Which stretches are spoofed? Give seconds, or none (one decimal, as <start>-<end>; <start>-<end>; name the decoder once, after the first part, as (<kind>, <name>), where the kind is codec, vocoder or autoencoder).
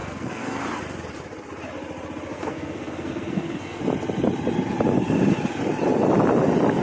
0.0-0.6 (codec, SNAC); 2.3-3.8